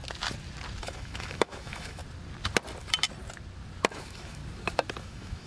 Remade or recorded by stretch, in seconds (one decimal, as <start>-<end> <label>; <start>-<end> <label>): 0.0-0.8 recorded; 0.8-2.0 remade; 2.0-3.9 recorded; 3.9-4.4 remade; 4.4-5.0 recorded; 5.0-5.5 remade